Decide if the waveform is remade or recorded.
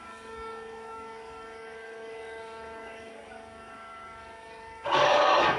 remade